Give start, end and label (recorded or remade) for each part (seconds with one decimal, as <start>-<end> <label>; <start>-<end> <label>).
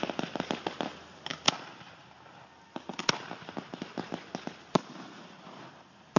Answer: 0.0-6.2 recorded